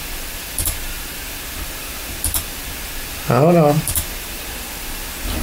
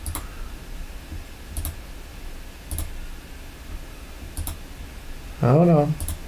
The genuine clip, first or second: second